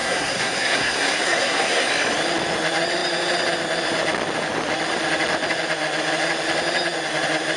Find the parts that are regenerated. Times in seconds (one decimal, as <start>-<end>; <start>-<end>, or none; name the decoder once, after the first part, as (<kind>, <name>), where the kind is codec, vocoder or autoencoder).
0.0-1.9 (codec, SNAC)